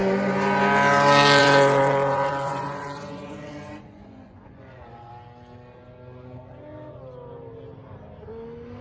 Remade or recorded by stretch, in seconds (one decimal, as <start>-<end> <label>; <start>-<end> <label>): 0.0-1.4 recorded; 1.4-5.1 remade; 5.1-8.8 recorded